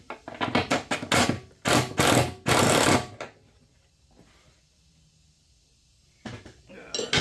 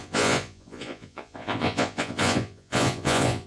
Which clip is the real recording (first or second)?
first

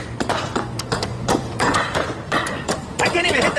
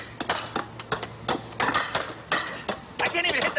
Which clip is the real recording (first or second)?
second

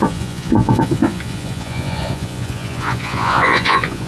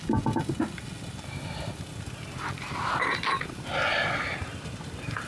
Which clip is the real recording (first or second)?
second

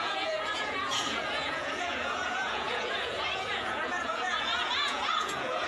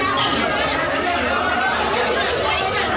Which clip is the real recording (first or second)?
second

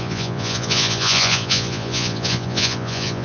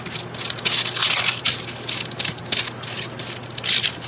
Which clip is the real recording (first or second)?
second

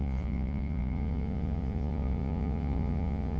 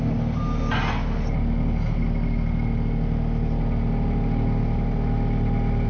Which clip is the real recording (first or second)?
second